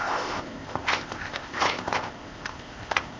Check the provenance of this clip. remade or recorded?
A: remade